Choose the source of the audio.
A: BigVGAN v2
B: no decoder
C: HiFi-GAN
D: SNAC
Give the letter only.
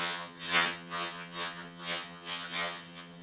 C